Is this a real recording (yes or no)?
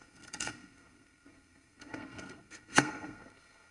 no